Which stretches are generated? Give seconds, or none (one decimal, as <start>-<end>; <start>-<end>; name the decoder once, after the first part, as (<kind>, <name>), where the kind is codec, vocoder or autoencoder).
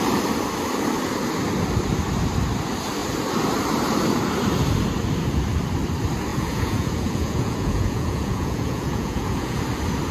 6.3-9.6 (vocoder, Vocos)